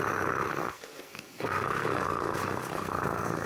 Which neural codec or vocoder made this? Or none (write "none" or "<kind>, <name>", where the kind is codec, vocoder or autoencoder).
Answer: codec, SNAC